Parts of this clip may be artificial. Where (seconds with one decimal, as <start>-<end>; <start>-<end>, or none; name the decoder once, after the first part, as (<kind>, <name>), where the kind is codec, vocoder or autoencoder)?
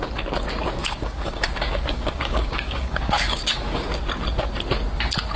0.8-4.0 (codec, DAC)